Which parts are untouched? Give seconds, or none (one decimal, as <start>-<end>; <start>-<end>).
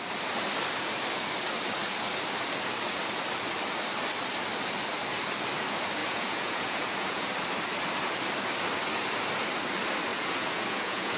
0.0-6.0; 7.3-10.1